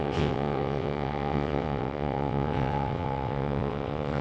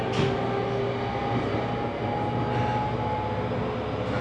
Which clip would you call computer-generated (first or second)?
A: first